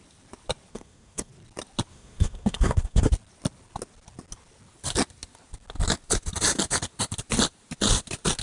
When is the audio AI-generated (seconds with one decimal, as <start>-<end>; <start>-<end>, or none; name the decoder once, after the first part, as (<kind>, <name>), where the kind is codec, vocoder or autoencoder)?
0.7-1.3 (codec, SNAC); 1.9-3.1